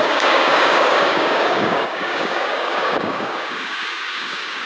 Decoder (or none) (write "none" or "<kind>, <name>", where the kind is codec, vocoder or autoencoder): codec, DAC